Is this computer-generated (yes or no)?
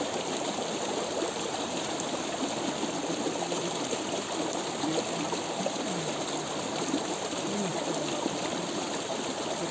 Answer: no